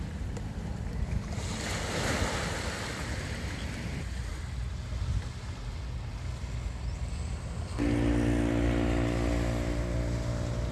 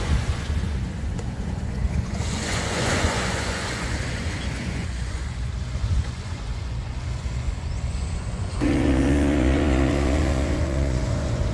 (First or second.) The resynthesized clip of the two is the second